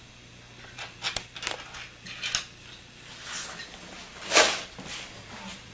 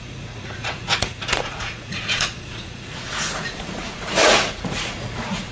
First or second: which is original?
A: first